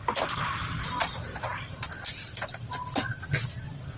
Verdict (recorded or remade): recorded